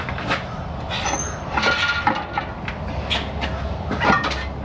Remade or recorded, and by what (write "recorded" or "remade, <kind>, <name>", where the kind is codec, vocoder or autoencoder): recorded